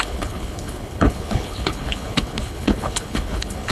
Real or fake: fake